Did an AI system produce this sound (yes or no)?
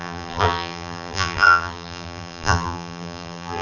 yes